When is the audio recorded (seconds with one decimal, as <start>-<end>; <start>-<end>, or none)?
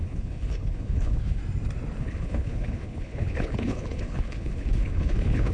1.4-2.0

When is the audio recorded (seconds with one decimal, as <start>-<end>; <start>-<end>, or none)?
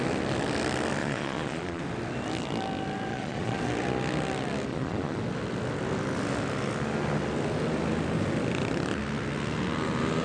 0.0-1.0; 1.8-3.1; 3.6-4.7; 5.2-10.2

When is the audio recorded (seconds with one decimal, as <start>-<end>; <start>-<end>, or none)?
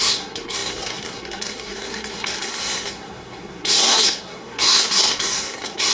none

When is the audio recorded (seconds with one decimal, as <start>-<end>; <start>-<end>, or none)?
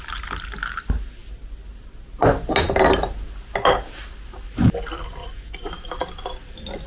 0.0-5.2; 5.7-6.9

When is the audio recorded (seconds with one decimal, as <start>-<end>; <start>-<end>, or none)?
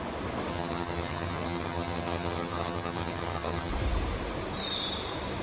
0.0-0.5; 3.7-5.4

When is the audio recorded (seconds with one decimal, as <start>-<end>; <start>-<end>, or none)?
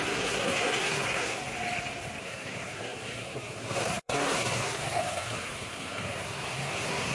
1.4-2.2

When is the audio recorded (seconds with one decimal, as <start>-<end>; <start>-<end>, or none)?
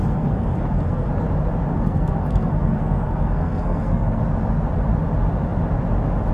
1.1-1.7; 4.2-6.3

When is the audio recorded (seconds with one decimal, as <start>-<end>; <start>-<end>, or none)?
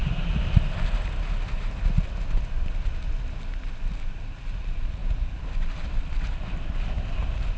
0.0-7.6